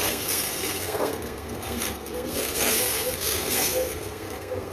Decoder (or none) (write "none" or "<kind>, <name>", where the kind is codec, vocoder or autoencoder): codec, SNAC